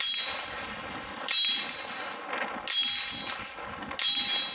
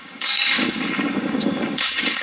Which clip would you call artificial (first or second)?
second